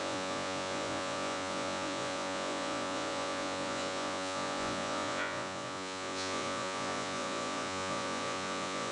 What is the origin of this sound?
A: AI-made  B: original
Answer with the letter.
A